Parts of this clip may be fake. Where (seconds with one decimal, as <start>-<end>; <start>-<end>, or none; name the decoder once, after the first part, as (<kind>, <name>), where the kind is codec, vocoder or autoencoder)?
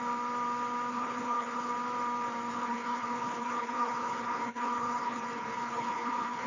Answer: 0.9-1.7 (codec, HILCodec); 2.5-6.5